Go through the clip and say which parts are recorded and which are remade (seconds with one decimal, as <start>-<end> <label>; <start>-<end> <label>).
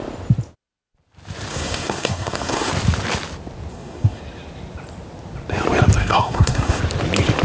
0.0-1.5 recorded; 1.5-2.7 remade; 2.7-3.7 recorded; 3.7-4.2 remade; 4.2-6.0 recorded; 6.0-6.8 remade; 6.8-7.4 recorded